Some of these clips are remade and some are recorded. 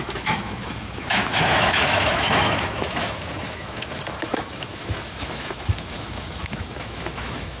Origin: remade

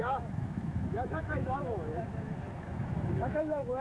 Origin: remade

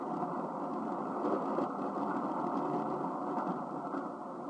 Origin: recorded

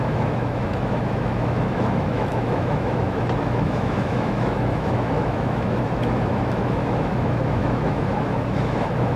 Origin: remade